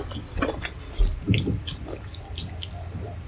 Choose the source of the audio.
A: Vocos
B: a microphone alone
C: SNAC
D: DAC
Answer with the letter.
B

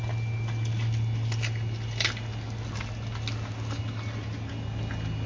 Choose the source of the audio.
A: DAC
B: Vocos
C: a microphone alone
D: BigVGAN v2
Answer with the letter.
C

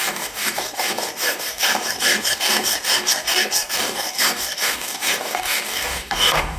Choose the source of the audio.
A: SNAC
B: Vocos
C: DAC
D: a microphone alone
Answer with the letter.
C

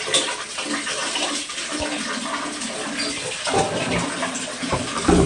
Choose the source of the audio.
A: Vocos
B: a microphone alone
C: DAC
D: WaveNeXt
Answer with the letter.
B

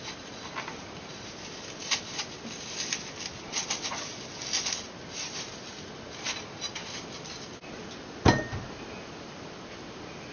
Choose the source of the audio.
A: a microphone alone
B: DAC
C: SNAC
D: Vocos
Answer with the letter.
A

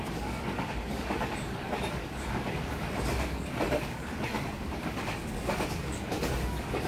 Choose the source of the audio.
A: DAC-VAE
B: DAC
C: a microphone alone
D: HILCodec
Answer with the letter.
B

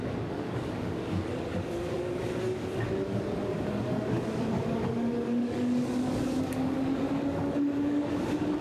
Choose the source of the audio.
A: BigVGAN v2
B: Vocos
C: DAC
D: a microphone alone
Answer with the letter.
C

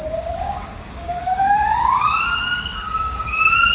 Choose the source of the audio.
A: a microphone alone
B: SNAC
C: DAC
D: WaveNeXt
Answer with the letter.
C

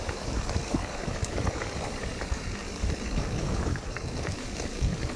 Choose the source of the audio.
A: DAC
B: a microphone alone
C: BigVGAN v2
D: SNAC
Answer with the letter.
A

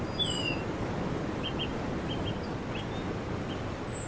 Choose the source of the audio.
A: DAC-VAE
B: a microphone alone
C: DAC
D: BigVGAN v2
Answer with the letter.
B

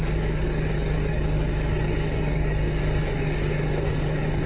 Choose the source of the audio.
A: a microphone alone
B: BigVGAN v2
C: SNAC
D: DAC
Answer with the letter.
D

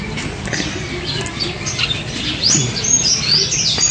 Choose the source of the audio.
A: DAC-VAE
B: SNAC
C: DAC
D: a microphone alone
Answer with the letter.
D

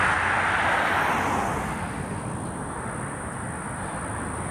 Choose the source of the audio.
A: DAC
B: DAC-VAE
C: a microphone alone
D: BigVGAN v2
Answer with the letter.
C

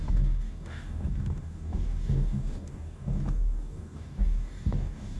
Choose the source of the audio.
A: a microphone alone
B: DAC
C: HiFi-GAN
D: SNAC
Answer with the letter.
B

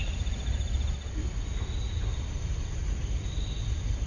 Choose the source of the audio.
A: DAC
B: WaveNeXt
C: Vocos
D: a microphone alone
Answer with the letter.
D